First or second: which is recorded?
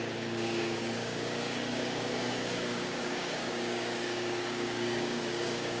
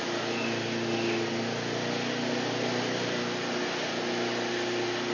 second